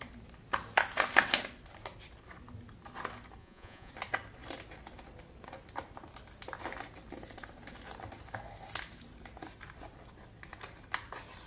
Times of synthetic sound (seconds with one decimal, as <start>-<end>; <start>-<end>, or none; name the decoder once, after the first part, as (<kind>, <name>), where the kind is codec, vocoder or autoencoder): 3.4-3.9 (vocoder, Vocos)